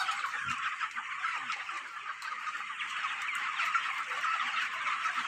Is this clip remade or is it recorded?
recorded